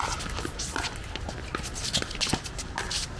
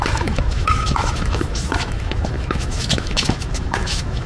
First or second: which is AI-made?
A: second